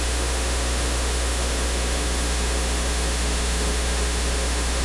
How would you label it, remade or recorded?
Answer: remade